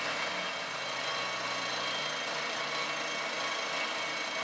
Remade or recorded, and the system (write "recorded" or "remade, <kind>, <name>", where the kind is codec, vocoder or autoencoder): recorded